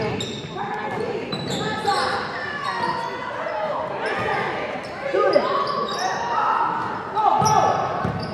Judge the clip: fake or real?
real